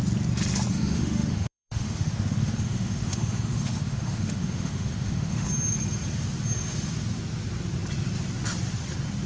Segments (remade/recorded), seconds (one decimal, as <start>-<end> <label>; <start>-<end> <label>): 0.0-0.7 recorded; 0.7-5.5 remade; 5.5-9.3 recorded